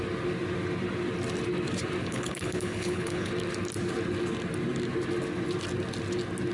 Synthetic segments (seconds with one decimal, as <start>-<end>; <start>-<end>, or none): 2.0-3.3